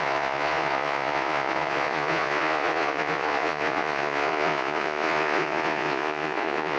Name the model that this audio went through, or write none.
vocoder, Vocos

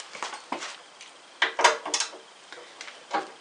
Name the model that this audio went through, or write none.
none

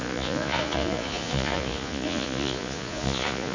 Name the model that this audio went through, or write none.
vocoder, Vocos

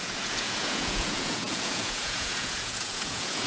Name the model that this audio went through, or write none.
vocoder, Vocos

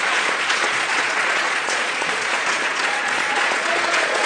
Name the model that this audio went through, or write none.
vocoder, Vocos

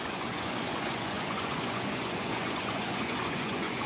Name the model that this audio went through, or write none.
vocoder, Vocos